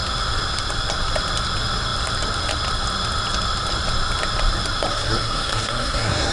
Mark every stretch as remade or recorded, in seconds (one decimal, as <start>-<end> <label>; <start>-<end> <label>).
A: 0.0-4.9 recorded; 4.9-6.3 remade